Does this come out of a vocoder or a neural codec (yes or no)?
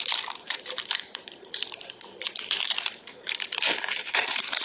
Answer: yes